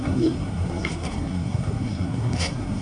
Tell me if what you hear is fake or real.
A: fake